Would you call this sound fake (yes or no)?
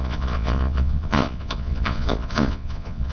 yes